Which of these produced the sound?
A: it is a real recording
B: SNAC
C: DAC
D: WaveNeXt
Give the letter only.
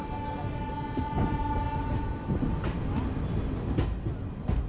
A